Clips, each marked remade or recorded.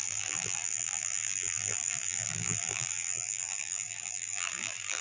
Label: remade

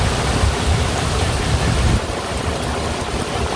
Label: recorded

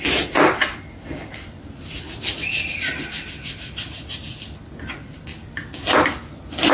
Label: recorded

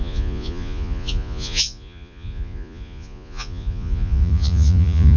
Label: remade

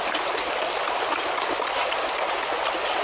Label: recorded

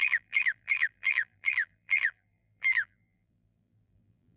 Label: remade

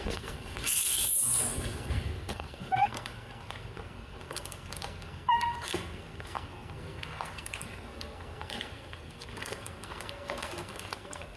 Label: remade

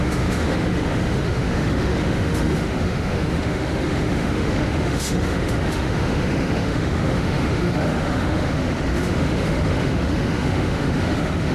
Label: remade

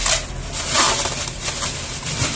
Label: recorded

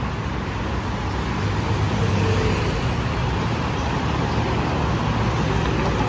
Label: recorded